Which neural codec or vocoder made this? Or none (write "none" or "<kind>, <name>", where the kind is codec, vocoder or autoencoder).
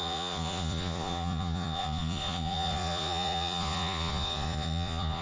vocoder, Vocos